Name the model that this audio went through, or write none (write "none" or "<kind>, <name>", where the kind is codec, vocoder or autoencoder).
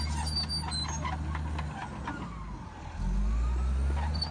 none